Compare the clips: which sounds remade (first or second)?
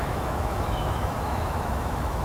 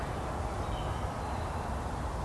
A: first